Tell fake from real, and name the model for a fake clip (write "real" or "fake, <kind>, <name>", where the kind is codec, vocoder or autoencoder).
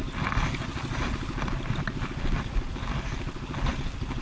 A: real